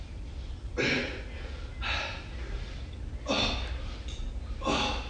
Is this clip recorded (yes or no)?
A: yes